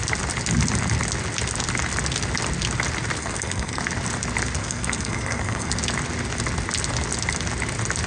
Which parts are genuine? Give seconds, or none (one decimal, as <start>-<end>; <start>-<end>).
0.0-3.2; 3.8-4.6; 5.7-8.1

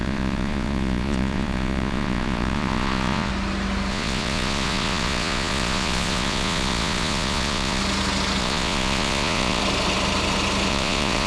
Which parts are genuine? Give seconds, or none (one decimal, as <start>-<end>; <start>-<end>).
3.3-3.9; 7.8-8.4; 9.6-10.7

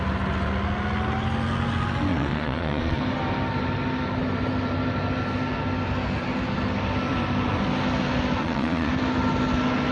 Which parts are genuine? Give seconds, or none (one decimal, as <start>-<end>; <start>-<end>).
0.0-2.1; 3.0-8.4; 8.9-9.9